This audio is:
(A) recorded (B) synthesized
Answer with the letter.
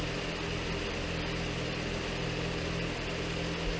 A